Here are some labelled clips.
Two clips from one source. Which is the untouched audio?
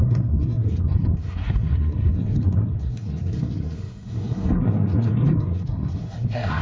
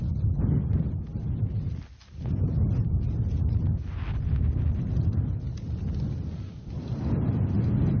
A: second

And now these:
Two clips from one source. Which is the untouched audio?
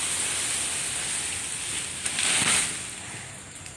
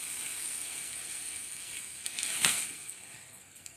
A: first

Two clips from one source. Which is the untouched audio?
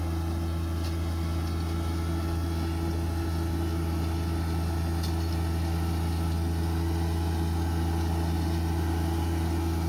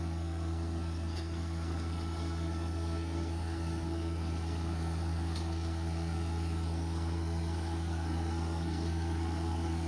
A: first